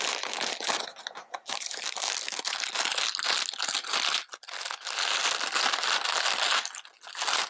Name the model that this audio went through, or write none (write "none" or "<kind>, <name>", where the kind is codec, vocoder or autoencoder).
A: none